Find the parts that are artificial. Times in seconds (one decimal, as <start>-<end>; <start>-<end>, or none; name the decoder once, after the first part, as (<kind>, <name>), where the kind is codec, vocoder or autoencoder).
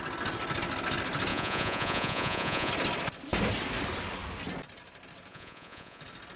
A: 1.3-2.7 (vocoder, Vocos); 5.3-6.0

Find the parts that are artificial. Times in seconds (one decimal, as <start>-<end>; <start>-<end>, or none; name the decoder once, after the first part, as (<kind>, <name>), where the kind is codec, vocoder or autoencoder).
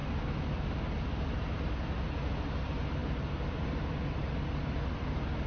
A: none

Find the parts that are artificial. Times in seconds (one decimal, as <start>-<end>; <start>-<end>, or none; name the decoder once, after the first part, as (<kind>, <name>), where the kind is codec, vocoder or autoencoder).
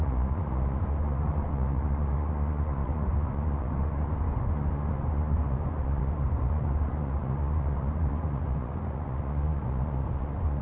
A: 0.0-10.6 (vocoder, Vocos)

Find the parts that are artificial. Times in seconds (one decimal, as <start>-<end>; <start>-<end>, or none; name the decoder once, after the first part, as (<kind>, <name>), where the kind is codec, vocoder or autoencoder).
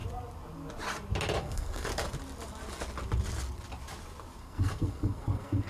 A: 1.4-1.9 (codec, SNAC); 4.4-5.7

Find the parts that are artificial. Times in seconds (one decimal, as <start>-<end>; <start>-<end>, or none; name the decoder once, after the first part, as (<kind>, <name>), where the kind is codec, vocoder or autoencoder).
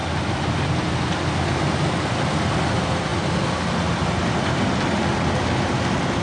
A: none